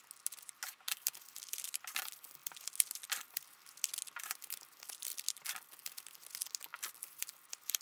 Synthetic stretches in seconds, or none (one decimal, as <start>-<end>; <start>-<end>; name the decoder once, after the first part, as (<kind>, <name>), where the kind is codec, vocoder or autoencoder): 5.1-5.9 (vocoder, BigVGAN v2); 6.7-7.8